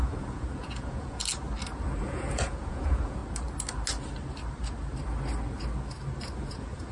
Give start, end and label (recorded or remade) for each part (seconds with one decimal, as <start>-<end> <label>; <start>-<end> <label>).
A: 0.0-1.2 remade; 1.2-2.0 recorded; 2.0-3.2 remade; 3.2-6.4 recorded; 6.4-6.9 remade